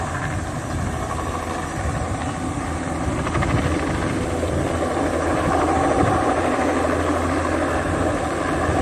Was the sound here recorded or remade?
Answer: recorded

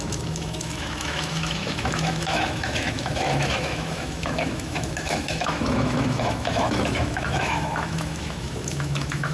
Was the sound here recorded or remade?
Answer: remade